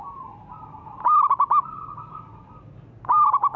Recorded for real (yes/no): yes